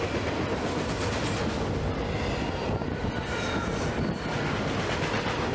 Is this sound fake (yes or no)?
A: no